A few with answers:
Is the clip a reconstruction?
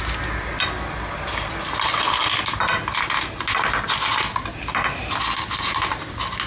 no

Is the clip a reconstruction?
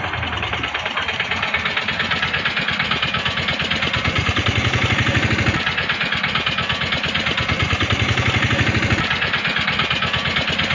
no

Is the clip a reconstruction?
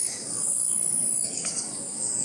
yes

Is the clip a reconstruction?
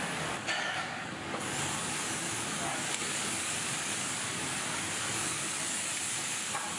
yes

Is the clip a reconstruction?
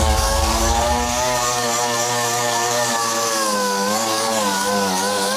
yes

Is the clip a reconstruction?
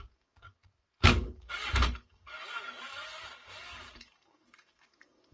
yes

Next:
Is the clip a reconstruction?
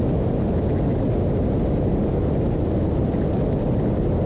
no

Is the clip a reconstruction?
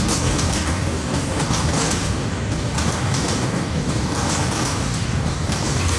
yes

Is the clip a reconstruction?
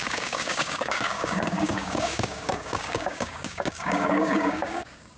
yes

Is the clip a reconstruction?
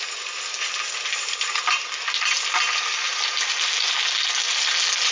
no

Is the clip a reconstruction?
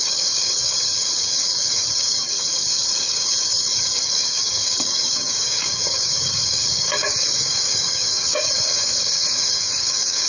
yes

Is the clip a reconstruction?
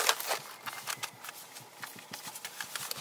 no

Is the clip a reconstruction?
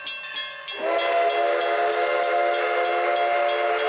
no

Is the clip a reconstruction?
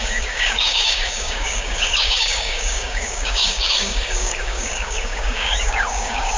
yes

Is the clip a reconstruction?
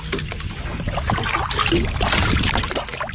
no